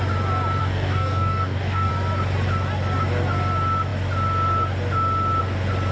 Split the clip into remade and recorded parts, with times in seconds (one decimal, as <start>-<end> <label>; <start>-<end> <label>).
0.0-0.6 recorded; 0.6-1.9 remade; 1.9-5.9 recorded